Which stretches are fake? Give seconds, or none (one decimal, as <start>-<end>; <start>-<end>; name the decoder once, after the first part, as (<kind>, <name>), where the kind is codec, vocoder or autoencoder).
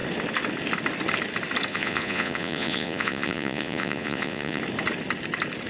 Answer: 1.7-4.6 (vocoder, Vocos)